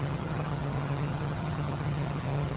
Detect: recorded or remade remade